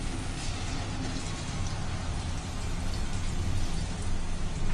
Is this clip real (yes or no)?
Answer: yes